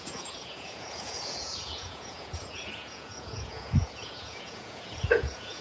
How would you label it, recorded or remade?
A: remade